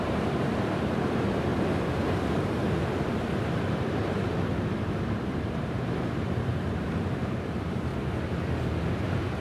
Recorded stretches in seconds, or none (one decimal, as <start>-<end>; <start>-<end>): 1.5-3.4; 7.9-9.4